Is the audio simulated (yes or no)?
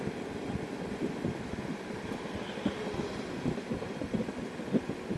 no